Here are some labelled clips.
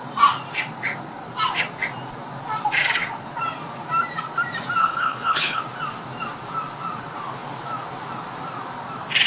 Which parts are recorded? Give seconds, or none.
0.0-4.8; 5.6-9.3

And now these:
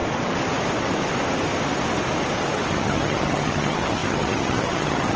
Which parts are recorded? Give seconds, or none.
0.0-2.7